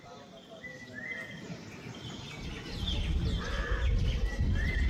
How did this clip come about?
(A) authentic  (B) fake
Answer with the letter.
A